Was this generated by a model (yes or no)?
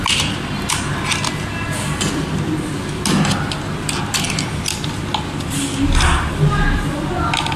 no